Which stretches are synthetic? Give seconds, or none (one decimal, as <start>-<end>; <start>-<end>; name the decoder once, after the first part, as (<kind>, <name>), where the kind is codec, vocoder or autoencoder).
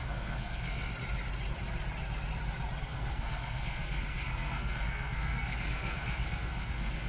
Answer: 0.0-0.9 (codec, SNAC); 2.8-7.1